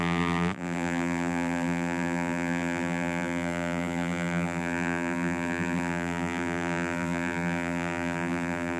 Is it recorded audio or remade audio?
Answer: remade